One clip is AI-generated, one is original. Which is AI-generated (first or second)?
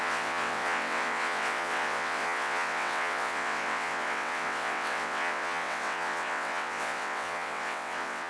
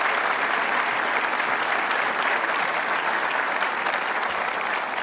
first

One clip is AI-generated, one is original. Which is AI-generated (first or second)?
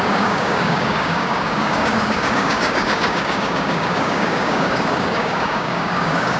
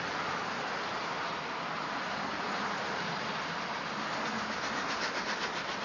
first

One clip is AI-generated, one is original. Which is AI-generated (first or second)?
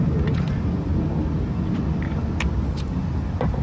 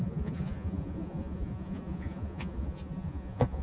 second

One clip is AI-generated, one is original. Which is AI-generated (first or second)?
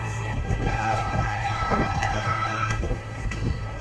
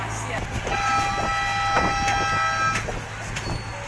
first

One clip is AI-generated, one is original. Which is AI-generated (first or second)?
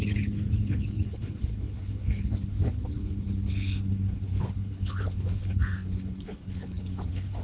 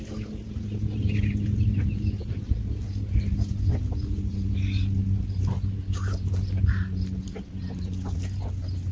first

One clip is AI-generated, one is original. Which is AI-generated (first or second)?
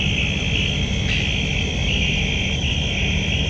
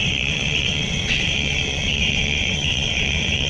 second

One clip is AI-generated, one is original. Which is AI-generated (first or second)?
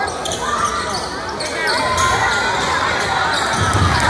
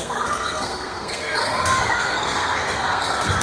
second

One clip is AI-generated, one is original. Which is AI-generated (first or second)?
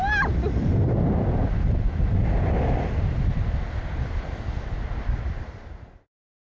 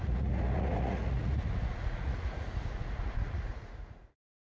second